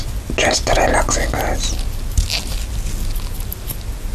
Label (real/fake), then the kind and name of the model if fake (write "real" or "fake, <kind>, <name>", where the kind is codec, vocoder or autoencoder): real